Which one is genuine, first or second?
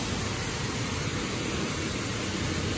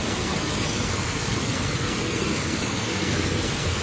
first